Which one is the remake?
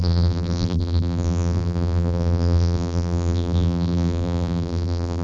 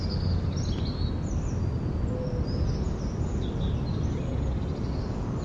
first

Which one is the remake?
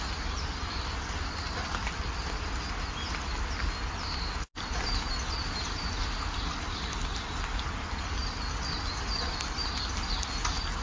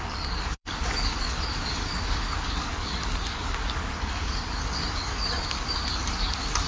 second